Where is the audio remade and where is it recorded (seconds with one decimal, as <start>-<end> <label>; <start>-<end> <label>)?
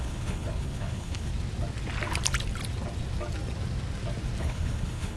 0.0-1.3 remade; 1.3-4.4 recorded; 4.4-5.2 remade